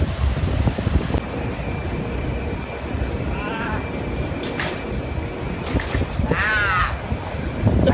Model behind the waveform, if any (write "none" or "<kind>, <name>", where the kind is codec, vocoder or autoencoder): none